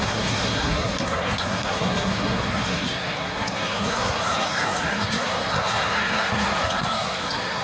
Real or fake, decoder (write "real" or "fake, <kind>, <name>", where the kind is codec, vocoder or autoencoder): fake, codec, SNAC